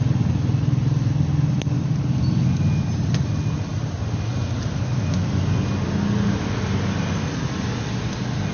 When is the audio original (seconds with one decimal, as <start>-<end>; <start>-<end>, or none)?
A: 0.0-8.5